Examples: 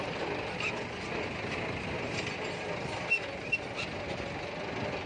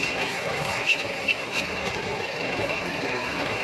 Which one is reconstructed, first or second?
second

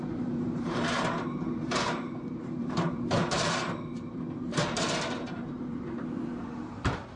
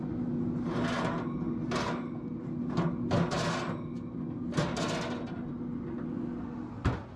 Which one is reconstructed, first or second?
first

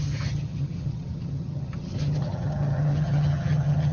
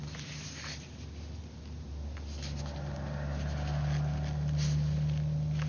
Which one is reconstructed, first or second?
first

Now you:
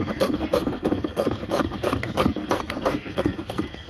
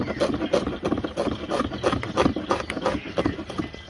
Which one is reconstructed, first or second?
first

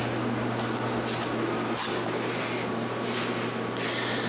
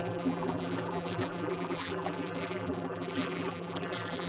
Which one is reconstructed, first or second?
second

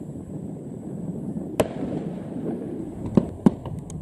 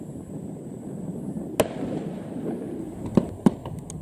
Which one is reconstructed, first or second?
first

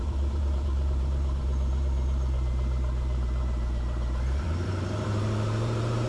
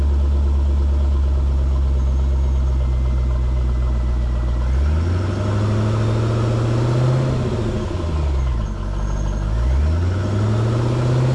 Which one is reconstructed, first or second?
first